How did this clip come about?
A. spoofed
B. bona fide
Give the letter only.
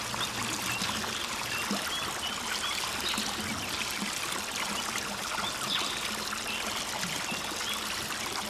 B